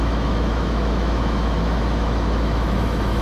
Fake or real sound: fake